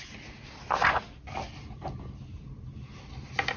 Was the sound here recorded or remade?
recorded